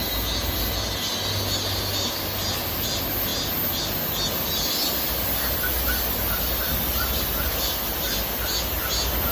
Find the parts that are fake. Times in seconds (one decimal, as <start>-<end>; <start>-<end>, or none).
none